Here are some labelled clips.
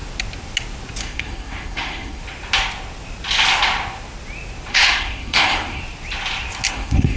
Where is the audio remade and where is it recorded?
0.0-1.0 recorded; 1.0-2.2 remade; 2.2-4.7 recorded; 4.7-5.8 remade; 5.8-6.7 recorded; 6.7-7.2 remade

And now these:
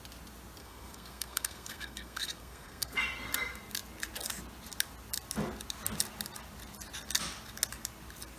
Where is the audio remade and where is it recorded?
0.0-0.6 recorded; 0.6-3.0 remade; 3.0-8.4 recorded